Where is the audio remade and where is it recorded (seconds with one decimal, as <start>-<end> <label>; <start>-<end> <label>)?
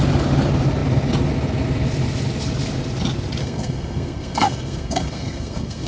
0.0-3.4 recorded; 3.4-5.9 remade